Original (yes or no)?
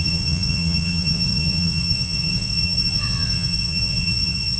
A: no